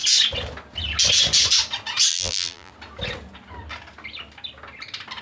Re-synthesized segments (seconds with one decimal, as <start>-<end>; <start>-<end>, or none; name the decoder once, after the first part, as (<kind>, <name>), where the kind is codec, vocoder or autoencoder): 2.1-2.7 (vocoder, BigVGAN v2)